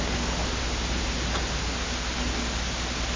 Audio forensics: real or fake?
real